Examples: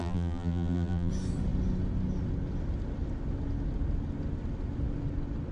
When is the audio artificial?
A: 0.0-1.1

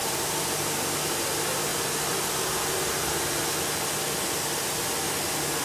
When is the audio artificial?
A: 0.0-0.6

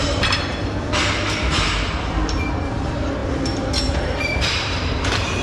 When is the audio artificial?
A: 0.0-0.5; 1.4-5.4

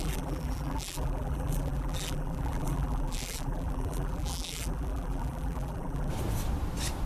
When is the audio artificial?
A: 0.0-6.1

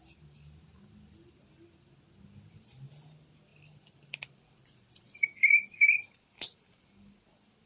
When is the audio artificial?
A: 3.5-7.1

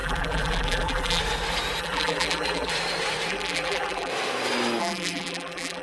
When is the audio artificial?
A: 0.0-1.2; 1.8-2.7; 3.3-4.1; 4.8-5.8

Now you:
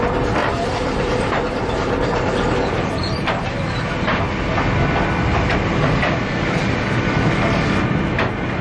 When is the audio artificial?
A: 0.4-3.3; 5.3-7.1

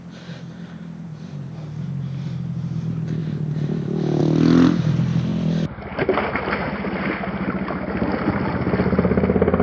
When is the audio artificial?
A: none